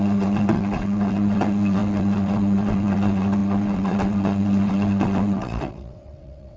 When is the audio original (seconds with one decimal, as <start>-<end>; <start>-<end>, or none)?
none